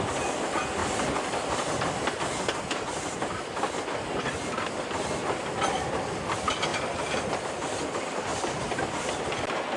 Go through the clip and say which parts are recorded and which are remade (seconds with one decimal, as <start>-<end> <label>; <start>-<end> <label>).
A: 0.0-9.8 recorded